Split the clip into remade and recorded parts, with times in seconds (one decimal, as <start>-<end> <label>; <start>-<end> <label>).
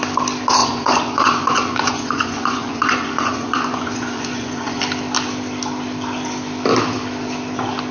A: 0.0-0.6 recorded; 0.6-4.8 remade; 4.8-7.9 recorded